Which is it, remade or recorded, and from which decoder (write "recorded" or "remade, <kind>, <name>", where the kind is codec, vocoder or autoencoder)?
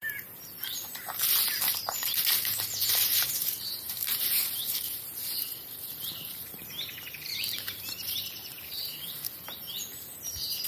remade, vocoder, BigVGAN v2